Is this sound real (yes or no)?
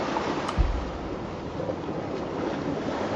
yes